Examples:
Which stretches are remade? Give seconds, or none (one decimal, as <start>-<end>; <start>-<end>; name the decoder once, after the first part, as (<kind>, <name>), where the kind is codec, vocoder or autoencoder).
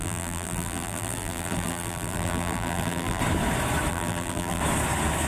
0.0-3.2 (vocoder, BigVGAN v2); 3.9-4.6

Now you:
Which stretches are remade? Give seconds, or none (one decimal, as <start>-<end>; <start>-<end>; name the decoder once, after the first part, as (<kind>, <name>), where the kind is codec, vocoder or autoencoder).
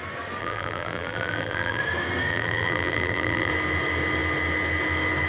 0.4-1.8 (vocoder, BigVGAN v2); 2.3-3.5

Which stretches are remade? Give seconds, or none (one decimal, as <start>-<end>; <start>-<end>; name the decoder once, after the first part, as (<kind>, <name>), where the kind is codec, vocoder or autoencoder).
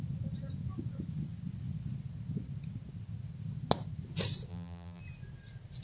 4.5-5.0 (vocoder, BigVGAN v2)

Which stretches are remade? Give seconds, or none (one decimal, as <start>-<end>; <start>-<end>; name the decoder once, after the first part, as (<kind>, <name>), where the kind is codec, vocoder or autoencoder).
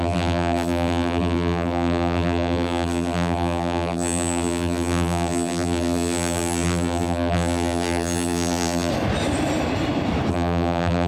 0.0-8.9 (vocoder, BigVGAN v2); 10.3-11.1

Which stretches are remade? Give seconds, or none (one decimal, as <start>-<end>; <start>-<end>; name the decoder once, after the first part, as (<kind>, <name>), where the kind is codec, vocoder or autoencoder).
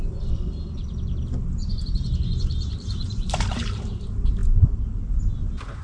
1.6-3.9 (vocoder, BigVGAN v2)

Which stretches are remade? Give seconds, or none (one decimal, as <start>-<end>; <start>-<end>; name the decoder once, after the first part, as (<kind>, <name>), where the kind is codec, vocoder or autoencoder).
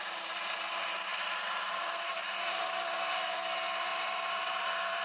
0.0-5.0 (vocoder, BigVGAN v2)